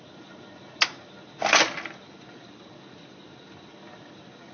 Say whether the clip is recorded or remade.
recorded